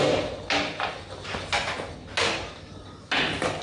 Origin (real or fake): real